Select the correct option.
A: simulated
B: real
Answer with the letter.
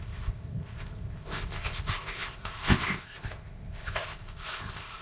A